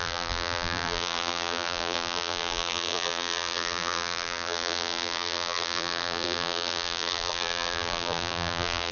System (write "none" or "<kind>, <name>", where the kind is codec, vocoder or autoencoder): vocoder, BigVGAN v2